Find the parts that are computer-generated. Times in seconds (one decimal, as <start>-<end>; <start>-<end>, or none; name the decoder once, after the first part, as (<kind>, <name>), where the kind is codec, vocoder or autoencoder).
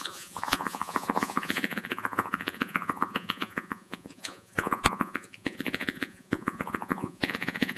0.0-7.8 (vocoder, Vocos)